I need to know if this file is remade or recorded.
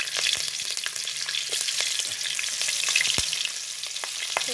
recorded